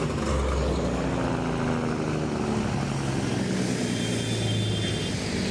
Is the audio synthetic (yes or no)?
no